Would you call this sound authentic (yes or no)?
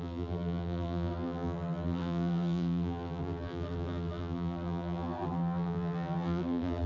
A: no